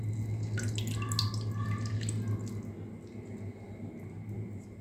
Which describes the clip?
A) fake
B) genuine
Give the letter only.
B